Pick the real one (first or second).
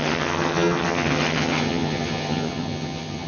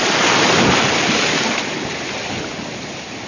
second